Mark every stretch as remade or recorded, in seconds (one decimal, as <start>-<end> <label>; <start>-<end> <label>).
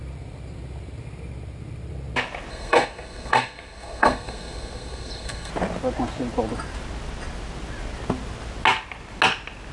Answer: 0.0-2.5 recorded; 2.5-5.5 remade; 5.5-9.7 recorded